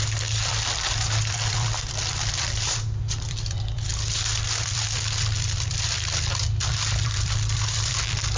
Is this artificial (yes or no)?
yes